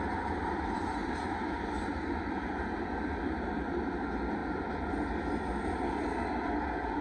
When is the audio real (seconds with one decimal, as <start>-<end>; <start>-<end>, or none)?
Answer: 0.0-7.0